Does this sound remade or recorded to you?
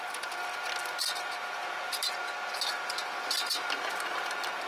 recorded